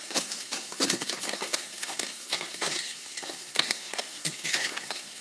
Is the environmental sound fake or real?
fake